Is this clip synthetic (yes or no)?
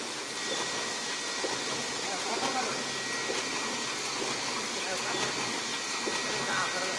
no